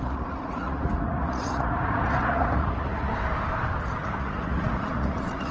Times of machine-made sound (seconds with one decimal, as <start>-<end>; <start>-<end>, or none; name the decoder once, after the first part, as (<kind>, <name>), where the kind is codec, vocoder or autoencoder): 0.0-3.1 (vocoder, Vocos); 3.8-5.5

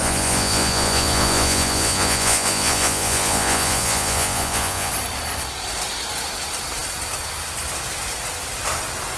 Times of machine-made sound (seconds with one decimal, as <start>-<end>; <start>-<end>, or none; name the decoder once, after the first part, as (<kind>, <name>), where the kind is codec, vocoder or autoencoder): 0.0-4.9 (vocoder, Vocos)

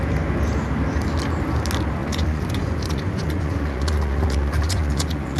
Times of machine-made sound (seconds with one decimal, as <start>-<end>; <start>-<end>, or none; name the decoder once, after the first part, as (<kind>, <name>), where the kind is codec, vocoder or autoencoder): 2.0-5.4 (vocoder, Vocos)

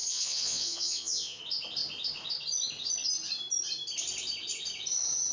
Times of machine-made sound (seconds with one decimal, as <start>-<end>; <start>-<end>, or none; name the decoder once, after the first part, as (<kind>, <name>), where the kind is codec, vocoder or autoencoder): 0.0-1.4 (vocoder, Vocos)

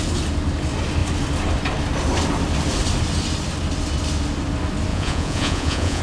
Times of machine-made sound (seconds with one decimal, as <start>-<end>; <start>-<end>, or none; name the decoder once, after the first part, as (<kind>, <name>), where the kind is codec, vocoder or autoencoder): 4.9-6.0 (vocoder, Vocos)

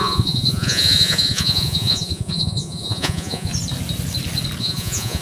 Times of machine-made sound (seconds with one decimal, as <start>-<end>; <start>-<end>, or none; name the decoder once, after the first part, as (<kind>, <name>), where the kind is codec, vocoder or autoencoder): 0.0-3.5 (vocoder, Vocos); 4.6-5.2

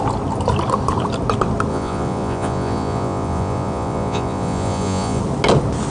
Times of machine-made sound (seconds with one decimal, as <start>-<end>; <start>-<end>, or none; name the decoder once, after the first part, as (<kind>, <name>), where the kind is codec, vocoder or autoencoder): 1.7-5.2 (vocoder, Vocos)